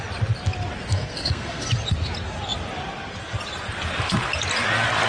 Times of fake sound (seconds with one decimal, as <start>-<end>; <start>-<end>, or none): 0.9-1.7